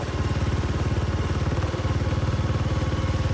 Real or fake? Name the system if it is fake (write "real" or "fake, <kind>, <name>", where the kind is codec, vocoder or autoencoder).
real